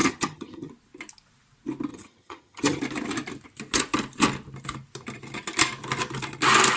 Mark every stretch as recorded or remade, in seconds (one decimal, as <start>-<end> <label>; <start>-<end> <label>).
0.0-0.7 remade; 0.7-1.9 recorded; 1.9-2.8 remade; 2.8-6.8 recorded